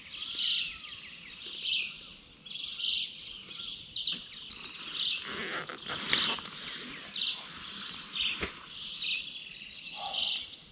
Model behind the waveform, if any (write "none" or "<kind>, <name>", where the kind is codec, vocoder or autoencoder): none